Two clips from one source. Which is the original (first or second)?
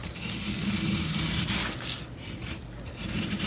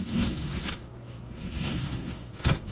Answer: first